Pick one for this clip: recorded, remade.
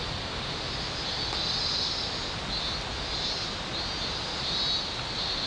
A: recorded